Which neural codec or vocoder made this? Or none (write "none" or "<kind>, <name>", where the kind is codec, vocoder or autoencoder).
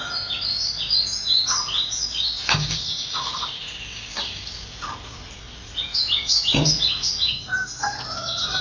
none